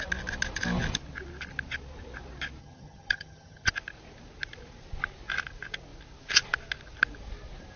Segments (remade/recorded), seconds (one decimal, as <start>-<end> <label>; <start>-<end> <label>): 0.0-2.6 recorded; 2.6-3.7 remade; 3.7-7.8 recorded